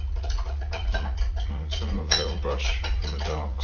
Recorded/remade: remade